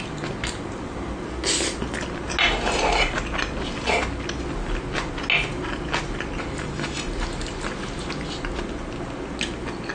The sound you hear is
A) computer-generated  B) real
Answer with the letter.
B